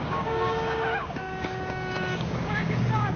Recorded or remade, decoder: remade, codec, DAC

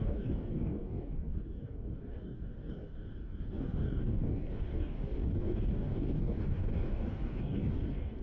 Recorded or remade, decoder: remade, codec, DAC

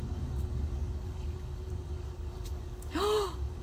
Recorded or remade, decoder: remade, codec, DAC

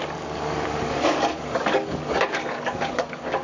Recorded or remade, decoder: remade, codec, DAC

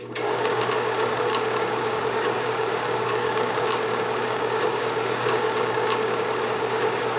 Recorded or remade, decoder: remade, codec, DAC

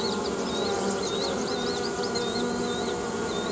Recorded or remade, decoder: recorded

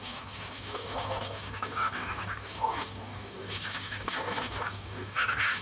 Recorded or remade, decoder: remade, codec, DAC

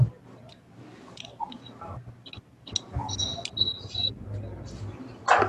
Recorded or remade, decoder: recorded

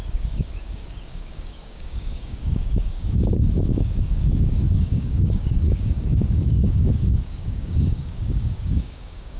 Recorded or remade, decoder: remade, codec, DAC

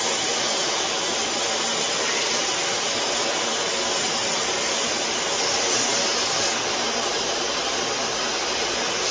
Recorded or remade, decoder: recorded